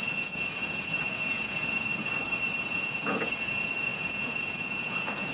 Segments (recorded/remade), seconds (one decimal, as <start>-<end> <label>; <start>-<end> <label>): 0.0-1.9 remade; 1.9-2.6 recorded; 2.6-5.3 remade